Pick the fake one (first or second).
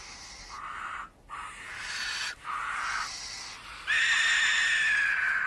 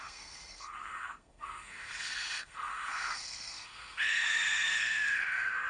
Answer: second